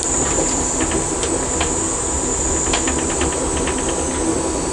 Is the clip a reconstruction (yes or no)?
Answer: no